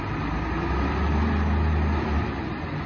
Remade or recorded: recorded